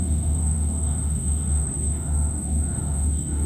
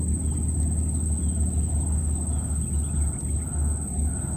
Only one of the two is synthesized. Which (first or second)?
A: first